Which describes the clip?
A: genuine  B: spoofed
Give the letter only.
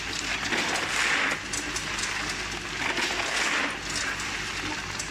A